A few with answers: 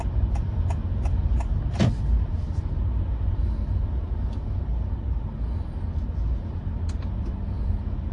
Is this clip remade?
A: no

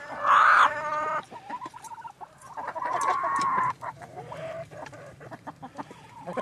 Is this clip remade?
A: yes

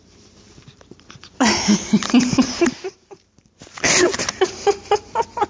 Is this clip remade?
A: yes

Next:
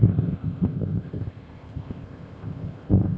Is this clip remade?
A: yes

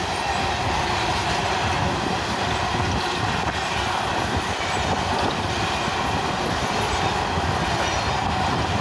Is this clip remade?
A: no